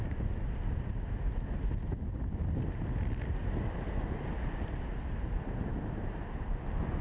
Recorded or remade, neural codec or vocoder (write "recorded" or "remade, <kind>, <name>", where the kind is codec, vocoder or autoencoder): recorded